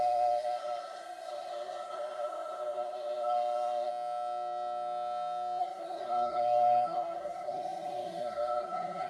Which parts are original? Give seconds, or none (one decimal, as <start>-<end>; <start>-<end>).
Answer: 3.9-5.6